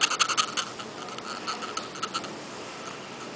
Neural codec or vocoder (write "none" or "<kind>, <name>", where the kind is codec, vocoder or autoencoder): none